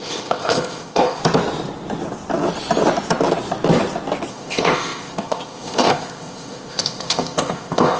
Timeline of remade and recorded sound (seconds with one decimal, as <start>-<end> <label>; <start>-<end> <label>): 0.0-1.2 remade; 1.2-4.3 recorded; 4.3-8.0 remade